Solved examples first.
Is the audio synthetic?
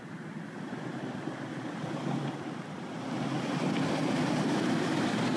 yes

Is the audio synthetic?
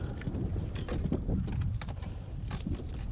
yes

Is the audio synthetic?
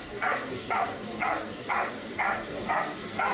yes